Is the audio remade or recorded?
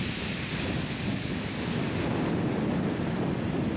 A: recorded